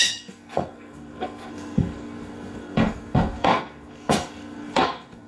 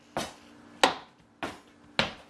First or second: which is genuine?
second